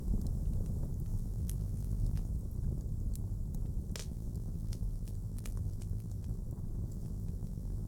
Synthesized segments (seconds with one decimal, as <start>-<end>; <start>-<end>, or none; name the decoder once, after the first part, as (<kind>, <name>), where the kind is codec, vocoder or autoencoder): 1.1-2.3 (vocoder, BigVGAN v2); 4.0-6.4; 6.9-7.9